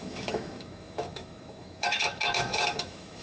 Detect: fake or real fake